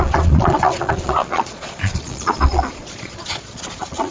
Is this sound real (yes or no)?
no